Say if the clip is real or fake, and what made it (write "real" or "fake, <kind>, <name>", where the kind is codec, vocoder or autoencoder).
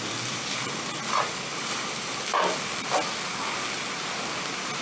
real